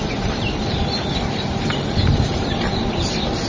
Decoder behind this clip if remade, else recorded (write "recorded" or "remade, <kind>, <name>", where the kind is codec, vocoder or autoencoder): recorded